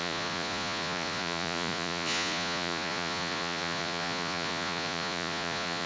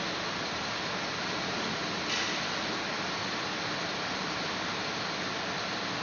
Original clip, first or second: second